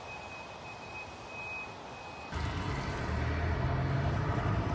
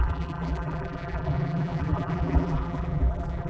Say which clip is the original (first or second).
first